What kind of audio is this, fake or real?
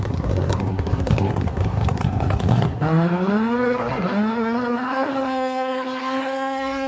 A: fake